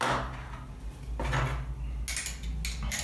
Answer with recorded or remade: recorded